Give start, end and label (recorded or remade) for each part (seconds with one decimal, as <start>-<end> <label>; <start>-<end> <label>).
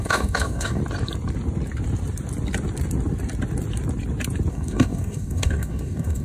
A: 0.0-0.8 remade; 0.8-4.5 recorded; 4.5-6.2 remade